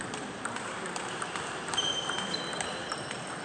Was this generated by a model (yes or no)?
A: yes